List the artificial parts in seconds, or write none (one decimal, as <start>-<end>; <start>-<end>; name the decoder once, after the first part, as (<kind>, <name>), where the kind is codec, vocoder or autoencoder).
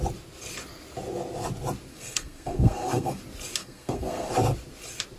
1.9-3.2 (codec, SNAC); 3.6-4.3